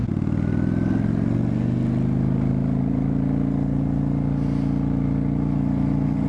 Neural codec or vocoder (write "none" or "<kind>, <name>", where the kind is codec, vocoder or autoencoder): none